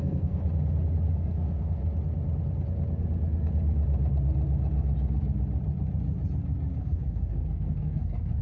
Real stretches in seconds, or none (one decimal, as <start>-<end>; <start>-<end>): 0.4-1.1; 1.8-6.8